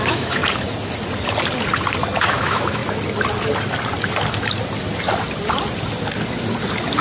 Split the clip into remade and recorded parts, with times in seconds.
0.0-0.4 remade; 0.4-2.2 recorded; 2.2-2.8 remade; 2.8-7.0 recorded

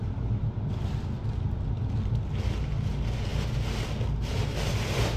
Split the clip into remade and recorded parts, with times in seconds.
0.0-5.2 recorded

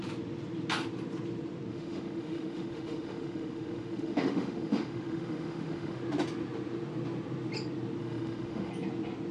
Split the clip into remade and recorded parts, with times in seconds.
0.0-1.7 recorded; 1.7-6.0 remade; 6.0-8.0 recorded; 8.0-8.7 remade; 8.7-9.3 recorded

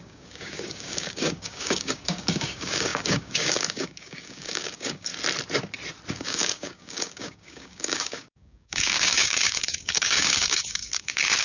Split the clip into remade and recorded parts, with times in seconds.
0.0-5.1 remade; 5.1-6.1 recorded; 6.1-11.4 remade